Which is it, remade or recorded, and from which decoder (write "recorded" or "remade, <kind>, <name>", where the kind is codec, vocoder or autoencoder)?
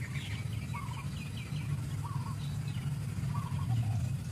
recorded